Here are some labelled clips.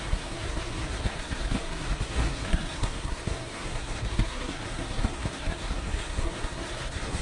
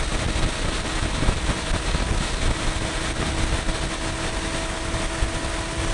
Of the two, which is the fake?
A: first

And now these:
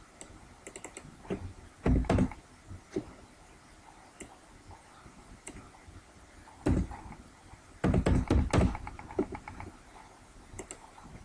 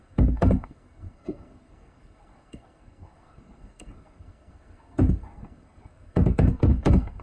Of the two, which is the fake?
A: second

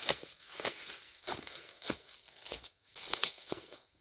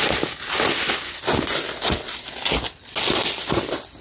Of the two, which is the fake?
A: first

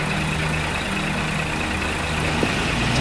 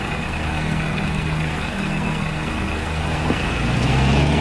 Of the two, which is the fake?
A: second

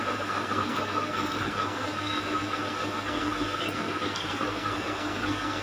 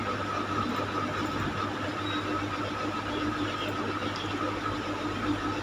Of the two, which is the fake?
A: first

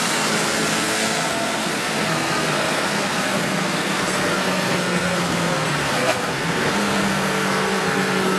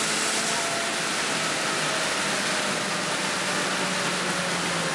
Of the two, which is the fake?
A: first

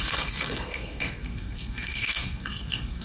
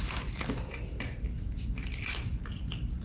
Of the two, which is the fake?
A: first